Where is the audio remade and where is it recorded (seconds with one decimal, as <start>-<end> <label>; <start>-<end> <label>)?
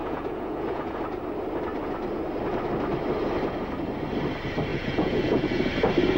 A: 0.0-1.0 remade; 1.0-4.7 recorded; 4.7-5.6 remade; 5.6-6.2 recorded